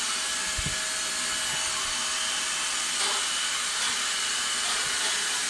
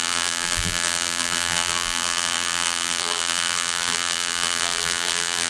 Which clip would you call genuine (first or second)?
first